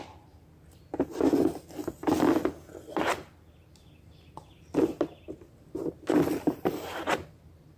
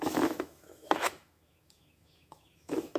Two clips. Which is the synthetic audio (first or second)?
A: second